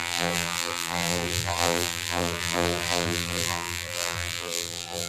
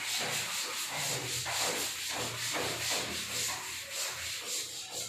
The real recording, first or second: second